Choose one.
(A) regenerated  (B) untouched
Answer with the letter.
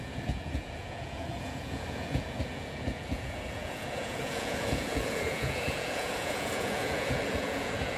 A